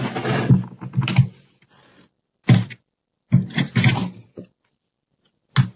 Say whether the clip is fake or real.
real